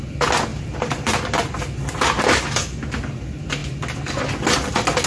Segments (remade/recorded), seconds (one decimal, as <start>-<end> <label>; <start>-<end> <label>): 0.0-0.5 recorded; 0.5-2.3 remade; 2.3-5.1 recorded